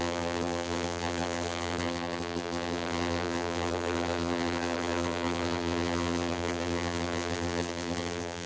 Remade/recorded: remade